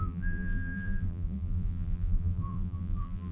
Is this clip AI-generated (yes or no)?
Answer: yes